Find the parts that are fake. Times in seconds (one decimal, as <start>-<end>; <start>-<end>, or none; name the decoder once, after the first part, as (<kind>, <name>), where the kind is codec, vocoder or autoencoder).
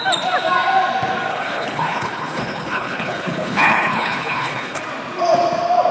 1.3-4.8 (codec, HILCodec)